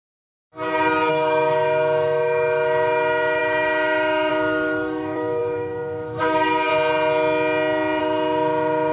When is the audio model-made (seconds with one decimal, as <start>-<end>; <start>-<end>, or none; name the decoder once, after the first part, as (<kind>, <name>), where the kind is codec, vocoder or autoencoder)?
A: 1.1-6.7 (autoencoder, DAC-VAE); 8.0-8.9